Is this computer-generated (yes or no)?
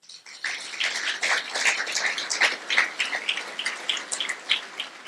no